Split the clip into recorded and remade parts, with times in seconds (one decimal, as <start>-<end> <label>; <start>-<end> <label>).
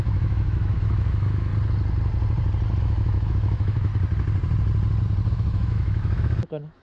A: 0.0-1.5 remade; 1.5-2.8 recorded; 2.8-3.9 remade; 3.9-5.3 recorded; 5.3-6.8 remade